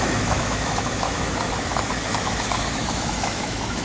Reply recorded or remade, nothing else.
remade